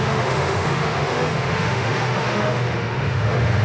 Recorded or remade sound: remade